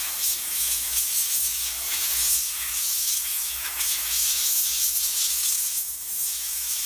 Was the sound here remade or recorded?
remade